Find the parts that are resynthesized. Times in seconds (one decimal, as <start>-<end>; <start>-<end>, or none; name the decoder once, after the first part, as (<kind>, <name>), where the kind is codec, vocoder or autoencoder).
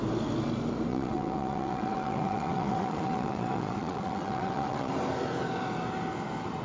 0.9-4.9 (vocoder, WaveNeXt)